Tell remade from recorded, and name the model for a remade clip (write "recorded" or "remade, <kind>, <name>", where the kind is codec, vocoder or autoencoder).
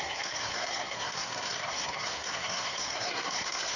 remade, codec, SNAC